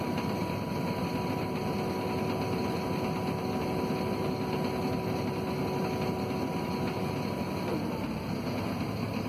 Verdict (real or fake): real